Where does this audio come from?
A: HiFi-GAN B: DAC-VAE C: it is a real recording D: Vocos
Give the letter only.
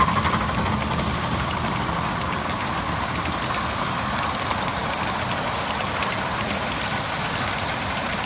C